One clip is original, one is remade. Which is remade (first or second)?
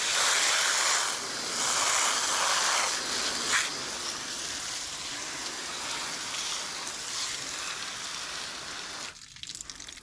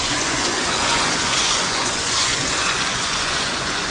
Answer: second